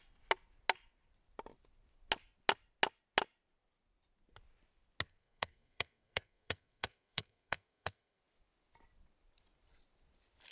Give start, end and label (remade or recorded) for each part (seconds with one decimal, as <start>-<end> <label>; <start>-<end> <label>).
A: 0.0-5.2 recorded; 5.2-8.2 remade; 8.2-10.5 recorded